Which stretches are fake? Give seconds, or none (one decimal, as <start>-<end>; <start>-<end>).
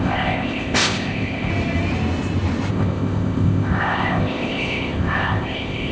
0.0-1.5; 2.7-5.9